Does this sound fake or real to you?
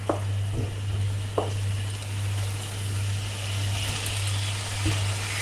real